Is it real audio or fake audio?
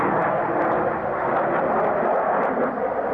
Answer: real